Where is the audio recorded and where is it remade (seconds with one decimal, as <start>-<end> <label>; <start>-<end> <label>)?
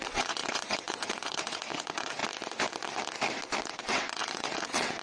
0.0-2.2 remade; 2.2-3.7 recorded; 3.7-5.0 remade